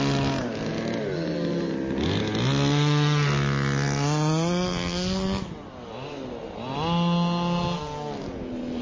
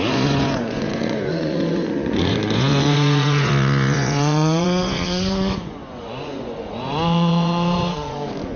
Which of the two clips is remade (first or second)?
second